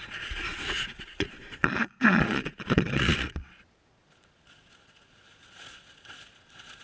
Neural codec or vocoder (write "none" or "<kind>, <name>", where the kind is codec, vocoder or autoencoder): vocoder, Vocos